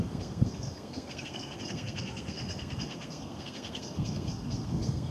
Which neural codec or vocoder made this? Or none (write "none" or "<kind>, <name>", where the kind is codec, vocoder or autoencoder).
codec, SNAC